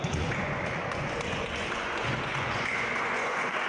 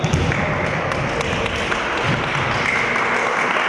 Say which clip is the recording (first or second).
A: second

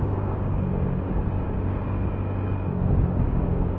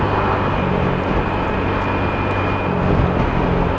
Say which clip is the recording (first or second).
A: second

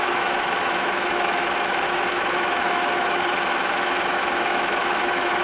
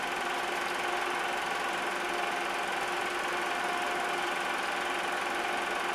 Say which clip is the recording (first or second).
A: second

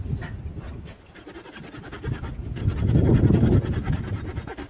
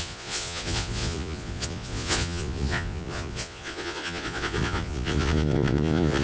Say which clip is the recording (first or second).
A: first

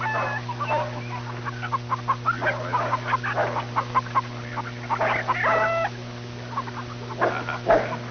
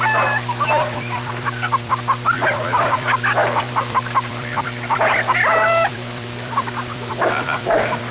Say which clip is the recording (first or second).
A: first